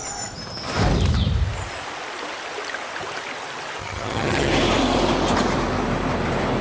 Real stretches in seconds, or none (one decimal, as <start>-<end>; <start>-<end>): 0.0-3.8; 4.5-6.6